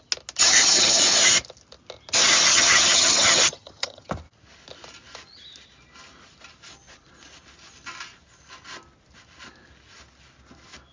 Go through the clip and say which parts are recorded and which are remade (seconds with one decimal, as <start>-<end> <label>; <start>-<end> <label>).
0.0-0.4 recorded; 0.4-1.0 remade; 1.0-2.5 recorded; 2.5-4.1 remade; 4.1-10.9 recorded